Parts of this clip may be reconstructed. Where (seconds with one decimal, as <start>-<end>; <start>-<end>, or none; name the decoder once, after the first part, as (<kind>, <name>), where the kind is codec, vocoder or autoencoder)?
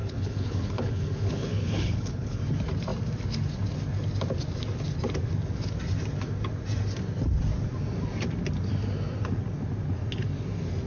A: 0.0-2.4 (codec, HILCodec)